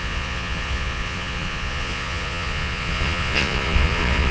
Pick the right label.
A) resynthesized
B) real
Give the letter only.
A